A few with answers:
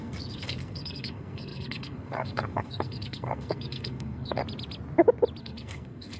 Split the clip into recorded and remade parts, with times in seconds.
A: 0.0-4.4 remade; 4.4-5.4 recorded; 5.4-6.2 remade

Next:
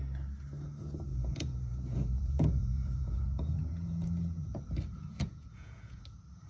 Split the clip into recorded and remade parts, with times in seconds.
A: 0.0-1.1 recorded; 1.1-4.6 remade; 4.6-5.0 recorded; 5.0-6.0 remade; 6.0-6.5 recorded

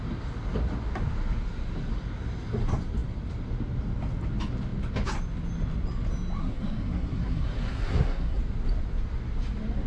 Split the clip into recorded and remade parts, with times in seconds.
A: 0.0-6.4 recorded; 6.4-8.4 remade; 8.4-9.9 recorded

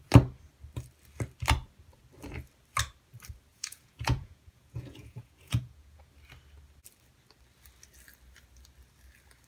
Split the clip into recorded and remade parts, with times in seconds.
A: 0.0-3.5 recorded; 3.5-6.1 remade; 6.1-9.5 recorded

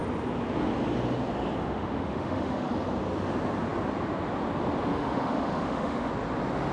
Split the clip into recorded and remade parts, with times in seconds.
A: 0.0-1.6 recorded; 1.6-2.7 remade; 2.7-4.9 recorded; 4.9-6.1 remade; 6.1-6.7 recorded